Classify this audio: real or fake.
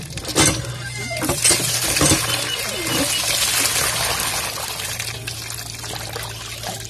real